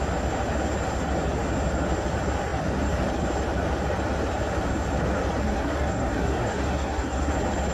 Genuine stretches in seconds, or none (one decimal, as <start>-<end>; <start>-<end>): 0.0-5.4; 7.3-7.7